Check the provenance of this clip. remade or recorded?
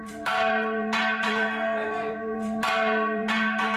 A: remade